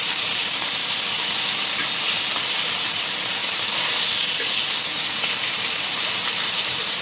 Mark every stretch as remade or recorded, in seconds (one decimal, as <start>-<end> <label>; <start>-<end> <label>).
0.0-0.8 remade; 0.8-1.5 recorded; 1.5-3.4 remade; 3.4-5.5 recorded; 5.5-7.0 remade